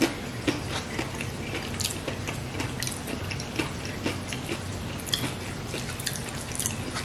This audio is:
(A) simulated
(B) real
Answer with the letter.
B